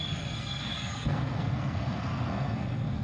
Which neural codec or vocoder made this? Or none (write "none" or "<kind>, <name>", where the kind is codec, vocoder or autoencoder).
codec, SNAC